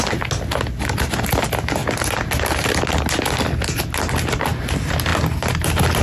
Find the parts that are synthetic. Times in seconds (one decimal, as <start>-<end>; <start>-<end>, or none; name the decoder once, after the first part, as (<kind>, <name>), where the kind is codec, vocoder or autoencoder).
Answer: none